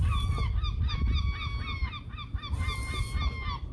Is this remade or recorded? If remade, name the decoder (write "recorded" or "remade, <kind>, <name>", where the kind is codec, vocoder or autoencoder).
recorded